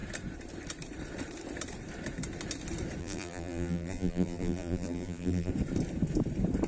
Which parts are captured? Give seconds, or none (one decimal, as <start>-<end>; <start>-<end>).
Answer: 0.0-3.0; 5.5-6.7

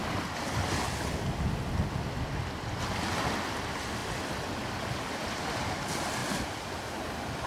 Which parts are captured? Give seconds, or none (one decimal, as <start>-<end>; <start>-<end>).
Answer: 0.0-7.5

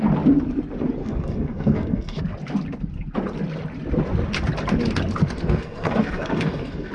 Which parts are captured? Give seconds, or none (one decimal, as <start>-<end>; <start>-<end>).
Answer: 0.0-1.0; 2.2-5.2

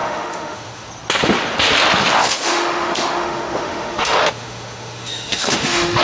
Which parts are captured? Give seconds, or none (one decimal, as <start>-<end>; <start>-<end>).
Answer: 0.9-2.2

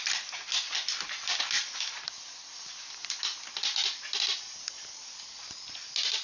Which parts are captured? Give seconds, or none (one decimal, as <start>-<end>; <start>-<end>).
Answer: 0.0-6.2